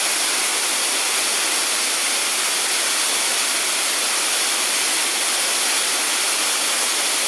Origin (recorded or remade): recorded